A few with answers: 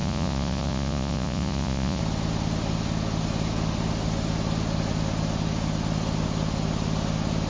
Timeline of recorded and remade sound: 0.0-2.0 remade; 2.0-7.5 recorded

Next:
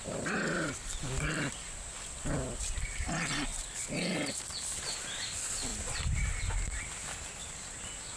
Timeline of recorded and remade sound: 0.0-3.5 remade; 3.5-4.3 recorded; 4.3-5.7 remade; 5.7-7.4 recorded; 7.4-8.2 remade

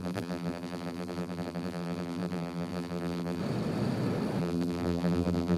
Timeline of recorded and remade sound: 0.0-3.4 remade; 3.4-4.4 recorded; 4.4-5.6 remade

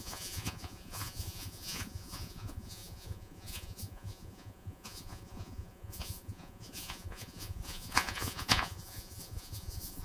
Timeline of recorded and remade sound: 0.0-10.0 remade